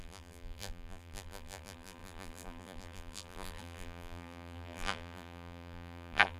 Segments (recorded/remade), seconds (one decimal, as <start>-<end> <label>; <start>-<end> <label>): 0.0-6.4 remade